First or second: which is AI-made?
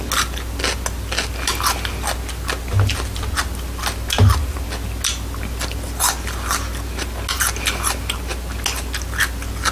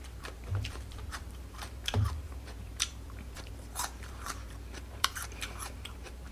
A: second